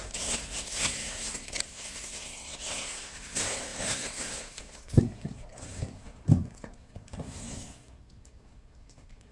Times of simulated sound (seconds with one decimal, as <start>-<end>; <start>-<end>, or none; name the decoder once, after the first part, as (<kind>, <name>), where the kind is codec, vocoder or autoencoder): 0.0-9.3 (codec, SNAC)